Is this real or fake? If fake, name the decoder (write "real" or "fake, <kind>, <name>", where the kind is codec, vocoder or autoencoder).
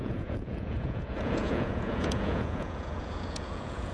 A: fake, vocoder, Vocos